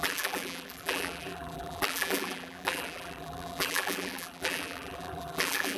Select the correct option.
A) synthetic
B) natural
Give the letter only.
A